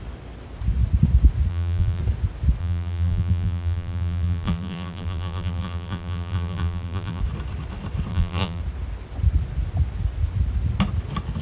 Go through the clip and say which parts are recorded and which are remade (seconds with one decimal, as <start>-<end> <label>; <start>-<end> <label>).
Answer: 0.0-1.5 recorded; 1.5-2.0 remade; 2.0-2.6 recorded; 2.6-7.2 remade; 7.2-8.1 recorded; 8.1-8.6 remade; 8.6-11.4 recorded